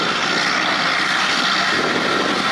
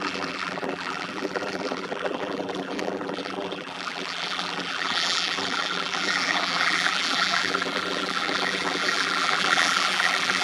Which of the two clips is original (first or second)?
first